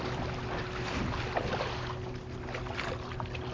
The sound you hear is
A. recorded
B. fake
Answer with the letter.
A